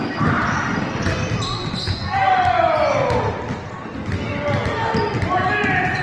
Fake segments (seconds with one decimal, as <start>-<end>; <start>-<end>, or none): none